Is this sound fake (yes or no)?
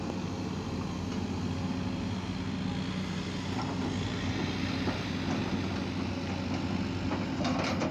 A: no